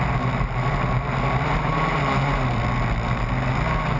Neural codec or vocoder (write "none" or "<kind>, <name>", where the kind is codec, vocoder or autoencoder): none